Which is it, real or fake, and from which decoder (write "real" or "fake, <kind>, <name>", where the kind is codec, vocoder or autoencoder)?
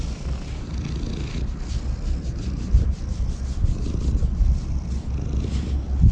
real